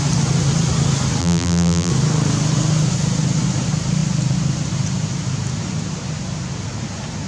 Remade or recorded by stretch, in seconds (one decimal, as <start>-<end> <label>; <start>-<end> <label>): 0.0-1.2 recorded; 1.2-1.9 remade; 1.9-7.3 recorded

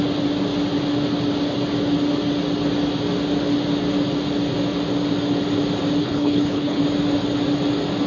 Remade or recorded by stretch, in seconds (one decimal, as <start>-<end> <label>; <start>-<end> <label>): 0.0-6.0 recorded; 6.0-6.8 remade; 6.8-8.1 recorded

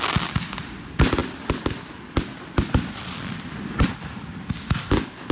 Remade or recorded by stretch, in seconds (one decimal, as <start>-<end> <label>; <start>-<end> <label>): 0.0-5.3 recorded

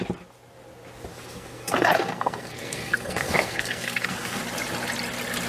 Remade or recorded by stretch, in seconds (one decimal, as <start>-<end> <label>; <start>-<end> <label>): 0.0-1.1 recorded; 1.1-4.4 remade; 4.4-5.5 recorded

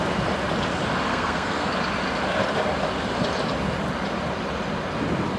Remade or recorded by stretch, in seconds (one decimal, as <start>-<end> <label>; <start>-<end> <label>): 0.0-1.1 recorded; 1.1-1.7 remade; 1.7-5.4 recorded